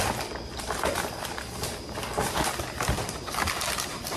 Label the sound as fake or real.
real